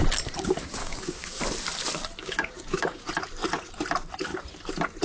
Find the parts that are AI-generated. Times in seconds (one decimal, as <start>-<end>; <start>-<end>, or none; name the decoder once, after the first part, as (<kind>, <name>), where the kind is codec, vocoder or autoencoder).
0.8-1.4 (codec, DAC); 2.2-3.1